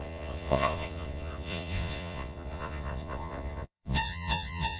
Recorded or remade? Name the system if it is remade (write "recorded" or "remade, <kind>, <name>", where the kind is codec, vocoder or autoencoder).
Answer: remade, vocoder, Vocos